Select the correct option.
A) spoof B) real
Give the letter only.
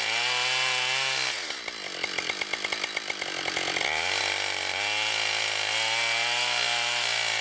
B